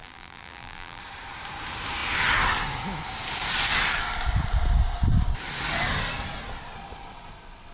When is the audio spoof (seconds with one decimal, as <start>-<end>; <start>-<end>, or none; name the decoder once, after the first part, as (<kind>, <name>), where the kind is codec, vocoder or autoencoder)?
0.0-1.0 (vocoder, BigVGAN v2)